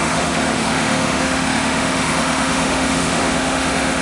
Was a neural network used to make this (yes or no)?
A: yes